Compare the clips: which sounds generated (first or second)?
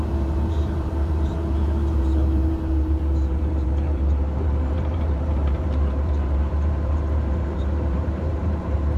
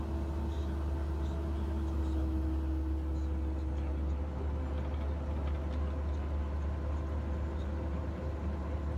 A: first